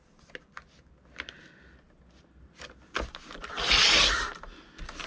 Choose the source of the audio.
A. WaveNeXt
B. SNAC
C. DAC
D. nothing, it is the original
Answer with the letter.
D